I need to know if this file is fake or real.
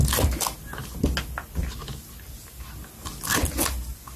real